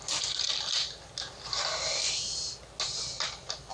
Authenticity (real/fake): real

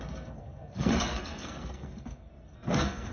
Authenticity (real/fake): fake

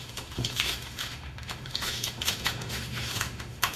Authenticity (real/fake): fake